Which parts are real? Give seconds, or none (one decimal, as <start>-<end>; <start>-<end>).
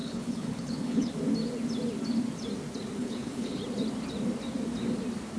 1.1-3.0; 3.6-5.4